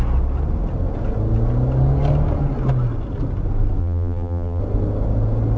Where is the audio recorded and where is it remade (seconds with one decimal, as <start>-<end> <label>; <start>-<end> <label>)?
0.0-3.8 recorded; 3.8-4.6 remade; 4.6-5.6 recorded